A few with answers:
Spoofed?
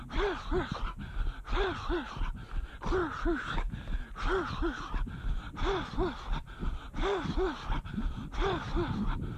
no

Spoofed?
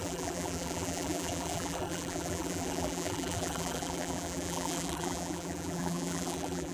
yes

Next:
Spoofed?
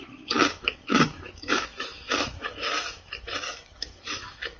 yes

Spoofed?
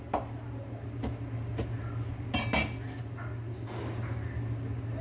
no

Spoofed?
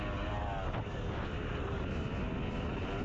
no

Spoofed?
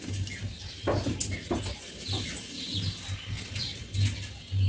no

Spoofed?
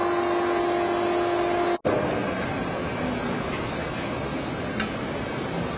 no